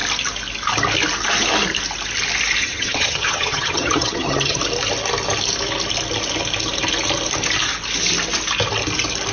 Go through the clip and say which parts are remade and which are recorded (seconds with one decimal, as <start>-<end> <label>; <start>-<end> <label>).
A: 0.0-2.6 recorded; 2.6-4.6 remade; 4.6-9.3 recorded